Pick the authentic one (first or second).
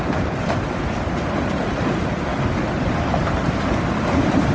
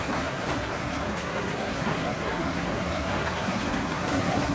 first